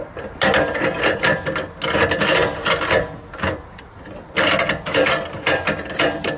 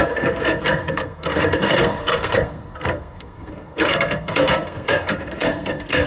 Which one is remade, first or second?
second